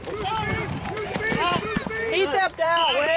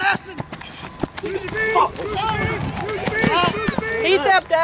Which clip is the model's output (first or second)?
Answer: first